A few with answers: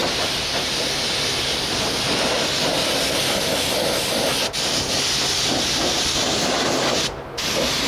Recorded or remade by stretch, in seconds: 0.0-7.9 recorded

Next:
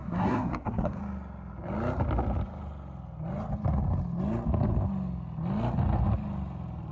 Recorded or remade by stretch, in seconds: 0.0-1.0 remade; 1.0-6.9 recorded

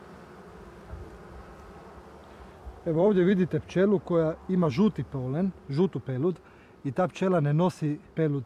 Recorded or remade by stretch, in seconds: 0.0-2.2 recorded; 2.2-4.7 remade; 4.7-8.5 recorded

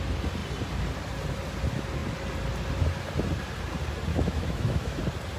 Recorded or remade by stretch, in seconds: 0.0-4.1 recorded; 4.1-5.0 remade; 5.0-5.4 recorded

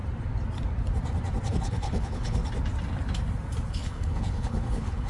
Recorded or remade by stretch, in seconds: 0.0-1.5 recorded; 1.5-2.4 remade; 2.4-3.7 recorded; 3.7-5.1 remade